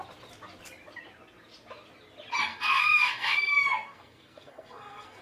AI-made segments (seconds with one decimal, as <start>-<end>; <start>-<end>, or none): 2.5-5.2